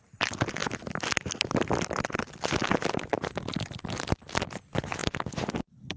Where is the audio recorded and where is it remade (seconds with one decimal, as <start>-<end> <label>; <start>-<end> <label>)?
0.0-0.6 recorded; 0.6-2.1 remade; 2.1-2.7 recorded; 2.7-3.5 remade; 3.5-6.0 recorded